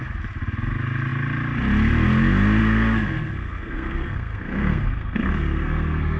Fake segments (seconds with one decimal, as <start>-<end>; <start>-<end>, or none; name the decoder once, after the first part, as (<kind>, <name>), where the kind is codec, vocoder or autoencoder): 2.6-6.2 (codec, SNAC)